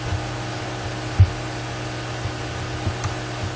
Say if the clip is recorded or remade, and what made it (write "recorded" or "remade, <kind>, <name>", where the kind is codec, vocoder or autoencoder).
recorded